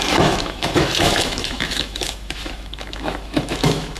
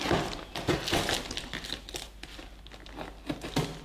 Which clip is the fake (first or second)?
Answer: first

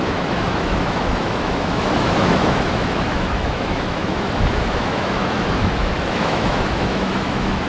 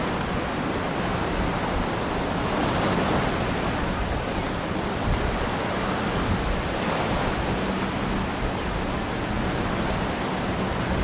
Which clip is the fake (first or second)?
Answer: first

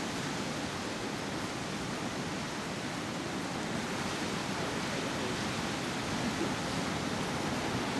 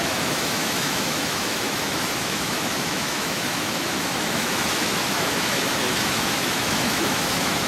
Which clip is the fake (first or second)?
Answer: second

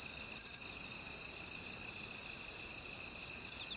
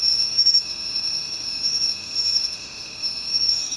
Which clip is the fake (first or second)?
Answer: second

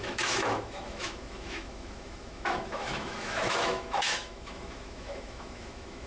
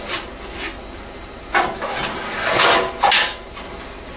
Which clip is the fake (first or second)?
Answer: first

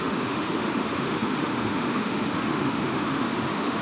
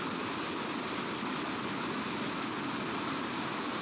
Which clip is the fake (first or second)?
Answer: first